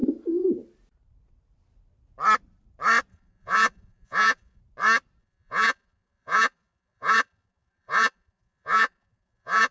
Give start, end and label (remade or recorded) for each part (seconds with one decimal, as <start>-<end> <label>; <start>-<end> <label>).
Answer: 0.0-3.1 recorded; 3.1-4.6 remade; 4.6-5.2 recorded; 5.2-9.7 remade